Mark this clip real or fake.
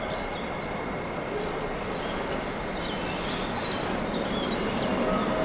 real